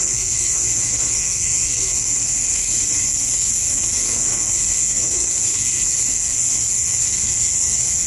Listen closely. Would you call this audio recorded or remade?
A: remade